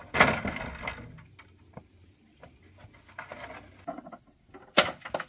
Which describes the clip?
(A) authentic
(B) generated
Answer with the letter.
A